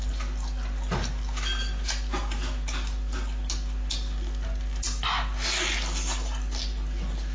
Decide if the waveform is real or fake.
real